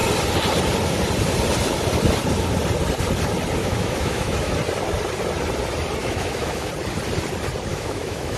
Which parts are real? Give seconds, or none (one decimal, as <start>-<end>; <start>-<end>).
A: 0.0-3.6; 4.5-6.0; 6.7-7.7